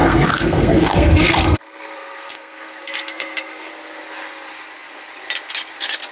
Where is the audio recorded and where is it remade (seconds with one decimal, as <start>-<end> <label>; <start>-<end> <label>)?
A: 0.0-3.7 remade; 3.7-6.1 recorded